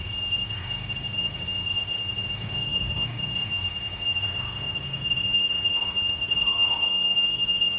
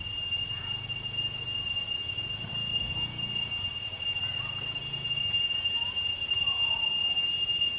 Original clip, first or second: second